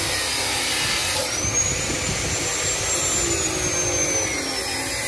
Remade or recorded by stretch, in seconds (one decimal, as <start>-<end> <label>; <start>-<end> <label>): 0.0-5.1 recorded